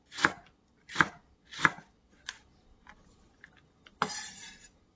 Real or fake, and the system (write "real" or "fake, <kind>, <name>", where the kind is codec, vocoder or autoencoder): real